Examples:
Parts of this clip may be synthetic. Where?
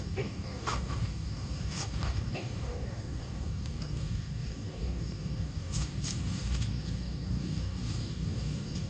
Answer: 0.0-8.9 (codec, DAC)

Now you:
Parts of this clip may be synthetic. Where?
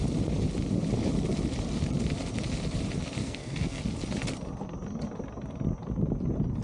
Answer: 3.2-3.8 (codec, SNAC)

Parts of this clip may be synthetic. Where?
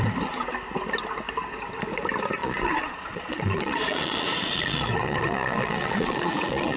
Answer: 2.4-6.8 (vocoder, Vocos)